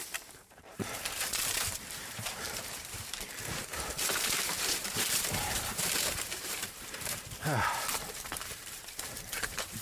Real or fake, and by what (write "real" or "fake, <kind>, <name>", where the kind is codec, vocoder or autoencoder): fake, vocoder, BigVGAN v2